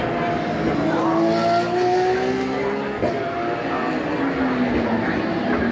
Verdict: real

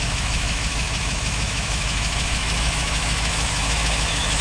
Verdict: fake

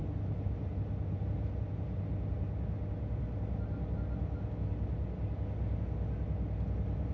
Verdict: real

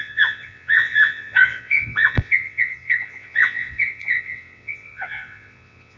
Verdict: fake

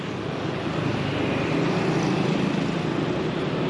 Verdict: real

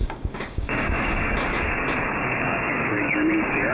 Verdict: fake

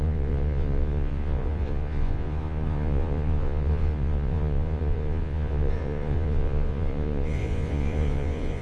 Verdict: fake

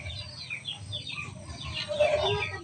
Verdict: real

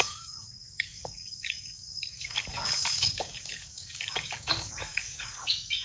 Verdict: fake